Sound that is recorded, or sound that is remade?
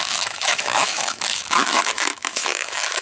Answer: remade